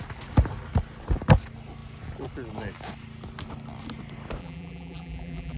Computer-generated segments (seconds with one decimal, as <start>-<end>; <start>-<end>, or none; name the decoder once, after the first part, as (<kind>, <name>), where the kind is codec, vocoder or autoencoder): 4.4-5.6 (vocoder, BigVGAN v2)